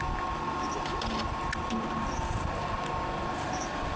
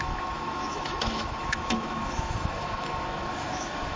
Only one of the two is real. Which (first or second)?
first